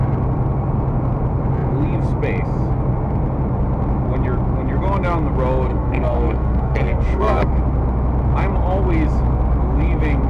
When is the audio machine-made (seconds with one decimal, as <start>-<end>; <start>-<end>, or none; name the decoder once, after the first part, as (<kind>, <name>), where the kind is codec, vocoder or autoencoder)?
5.7-7.5 (codec, SNAC)